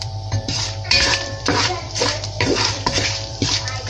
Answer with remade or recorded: remade